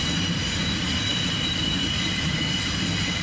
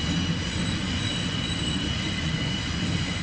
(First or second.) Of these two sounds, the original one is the first